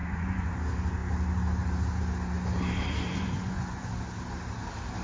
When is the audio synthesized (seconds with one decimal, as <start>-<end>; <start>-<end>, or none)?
0.0-0.5; 3.1-3.9

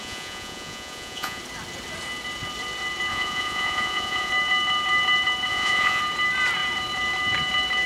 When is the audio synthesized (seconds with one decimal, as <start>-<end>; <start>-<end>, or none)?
0.0-1.4; 3.1-4.3; 5.5-6.0

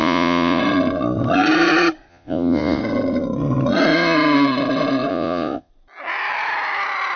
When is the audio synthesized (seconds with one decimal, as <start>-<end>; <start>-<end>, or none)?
0.0-0.6; 2.1-2.8; 5.1-5.7